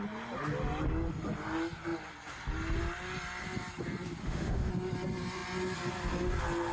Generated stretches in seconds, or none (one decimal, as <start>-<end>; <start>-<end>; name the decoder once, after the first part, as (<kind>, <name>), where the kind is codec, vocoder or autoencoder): 4.2-4.7 (autoencoder, DAC-VAE)